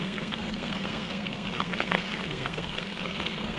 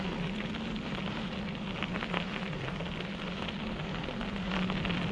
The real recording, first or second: second